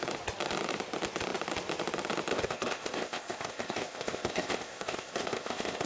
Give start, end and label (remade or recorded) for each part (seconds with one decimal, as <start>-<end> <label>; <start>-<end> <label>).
0.0-2.3 recorded; 2.3-5.9 remade